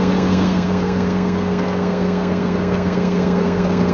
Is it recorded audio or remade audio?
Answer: remade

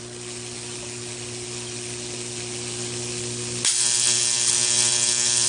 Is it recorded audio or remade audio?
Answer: recorded